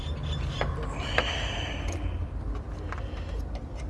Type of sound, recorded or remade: recorded